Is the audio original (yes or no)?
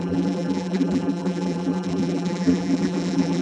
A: no